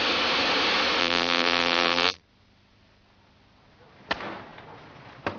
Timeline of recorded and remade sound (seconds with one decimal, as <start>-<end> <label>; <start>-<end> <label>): 0.0-1.0 recorded; 1.0-2.2 remade; 2.2-5.4 recorded